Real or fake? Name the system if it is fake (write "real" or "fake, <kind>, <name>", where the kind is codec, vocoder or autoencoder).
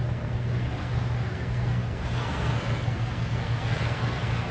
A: fake, codec, SNAC